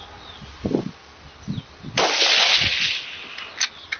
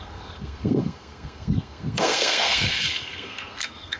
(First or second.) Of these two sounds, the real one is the first